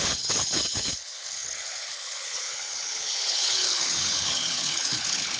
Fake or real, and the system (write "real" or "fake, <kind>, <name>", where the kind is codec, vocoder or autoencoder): fake, codec, HILCodec